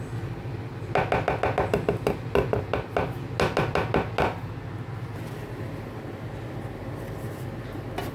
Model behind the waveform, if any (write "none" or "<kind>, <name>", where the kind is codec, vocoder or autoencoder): none